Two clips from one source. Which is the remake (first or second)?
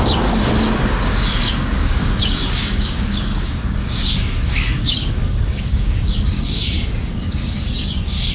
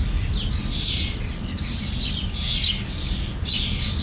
first